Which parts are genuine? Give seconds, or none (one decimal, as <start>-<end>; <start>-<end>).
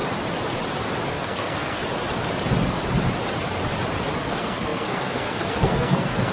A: 0.0-1.1; 1.8-4.2